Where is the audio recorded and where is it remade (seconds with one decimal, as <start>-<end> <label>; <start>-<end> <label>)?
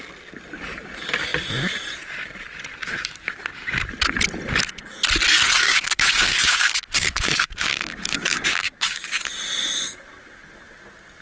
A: 0.0-5.6 recorded; 5.6-9.3 remade; 9.3-11.2 recorded